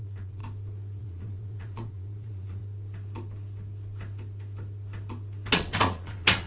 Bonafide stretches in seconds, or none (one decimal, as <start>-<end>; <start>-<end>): 0.4-1.0; 2.6-5.5